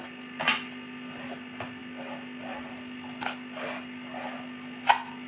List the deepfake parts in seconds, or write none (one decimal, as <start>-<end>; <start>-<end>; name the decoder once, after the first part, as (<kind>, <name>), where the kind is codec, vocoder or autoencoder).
none